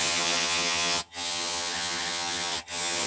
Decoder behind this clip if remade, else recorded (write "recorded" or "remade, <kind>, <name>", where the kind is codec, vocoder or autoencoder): remade, vocoder, HiFi-GAN